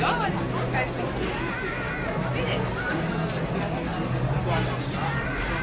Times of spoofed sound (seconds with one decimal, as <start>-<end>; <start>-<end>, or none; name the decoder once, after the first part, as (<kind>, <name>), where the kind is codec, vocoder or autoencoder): 2.7-3.9 (vocoder, BigVGAN v2)